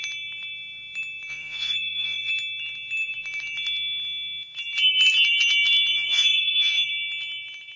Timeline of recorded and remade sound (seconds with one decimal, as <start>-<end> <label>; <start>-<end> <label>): 0.0-1.3 recorded; 1.3-2.3 remade; 2.3-5.9 recorded; 5.9-6.9 remade; 6.9-7.8 recorded